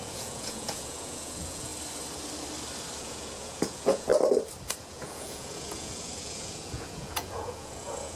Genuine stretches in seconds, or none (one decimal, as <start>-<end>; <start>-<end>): 1.7-3.0; 4.1-4.8